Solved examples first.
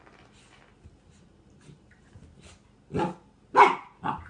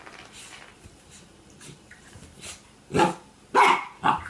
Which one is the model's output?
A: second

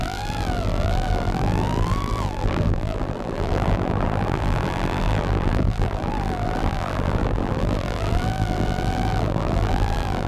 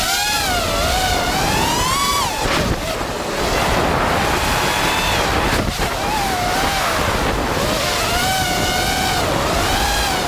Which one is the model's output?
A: first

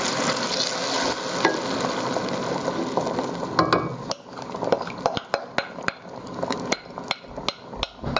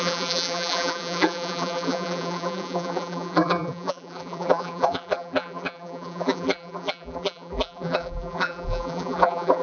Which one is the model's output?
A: second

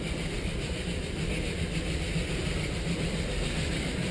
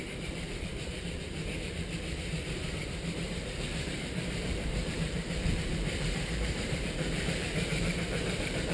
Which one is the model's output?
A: second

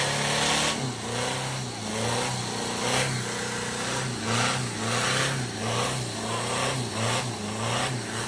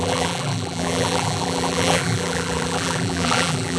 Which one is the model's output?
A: second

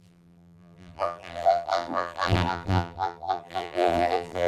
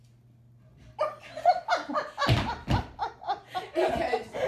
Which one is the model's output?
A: first